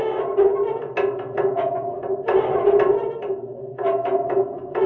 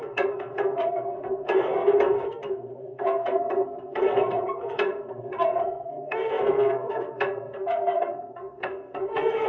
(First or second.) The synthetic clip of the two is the second